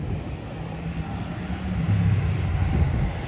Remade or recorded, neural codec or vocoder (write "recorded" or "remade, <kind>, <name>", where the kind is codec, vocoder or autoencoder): recorded